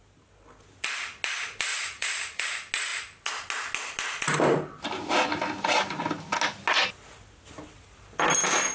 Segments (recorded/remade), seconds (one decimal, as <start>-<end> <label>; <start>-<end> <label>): 0.0-1.7 recorded; 1.7-2.4 remade; 2.4-8.7 recorded